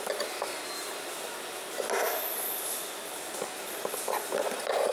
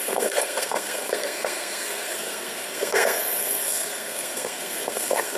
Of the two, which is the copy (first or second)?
second